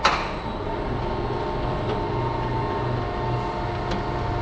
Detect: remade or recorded recorded